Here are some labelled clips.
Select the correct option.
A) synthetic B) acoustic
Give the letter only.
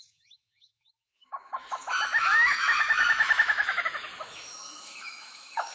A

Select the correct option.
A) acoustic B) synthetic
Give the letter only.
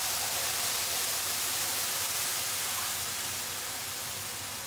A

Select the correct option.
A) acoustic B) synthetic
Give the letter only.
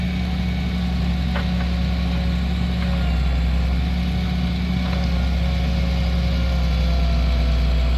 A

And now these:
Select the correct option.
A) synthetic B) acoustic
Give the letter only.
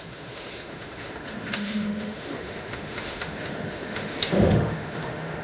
A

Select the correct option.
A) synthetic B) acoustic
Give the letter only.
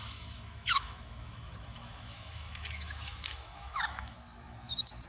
A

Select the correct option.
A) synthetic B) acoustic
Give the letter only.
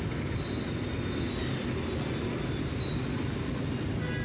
B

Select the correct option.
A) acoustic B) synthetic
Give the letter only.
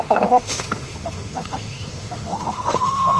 B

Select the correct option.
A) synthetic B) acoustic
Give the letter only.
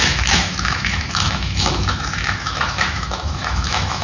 A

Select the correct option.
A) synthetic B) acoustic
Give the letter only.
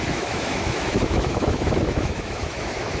A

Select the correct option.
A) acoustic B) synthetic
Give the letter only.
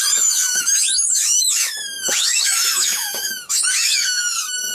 B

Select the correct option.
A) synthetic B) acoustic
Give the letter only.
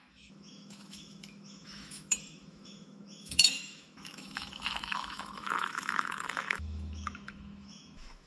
A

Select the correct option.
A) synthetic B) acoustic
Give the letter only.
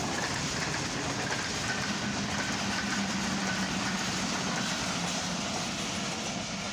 B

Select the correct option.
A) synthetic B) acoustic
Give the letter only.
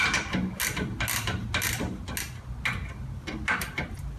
B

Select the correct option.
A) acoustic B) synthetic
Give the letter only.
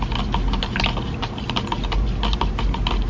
A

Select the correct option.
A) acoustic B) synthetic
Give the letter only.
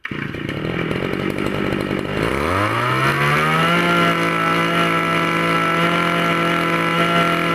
A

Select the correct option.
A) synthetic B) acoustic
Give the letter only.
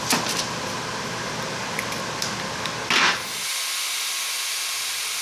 B